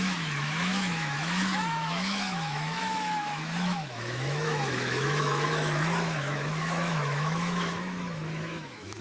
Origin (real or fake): fake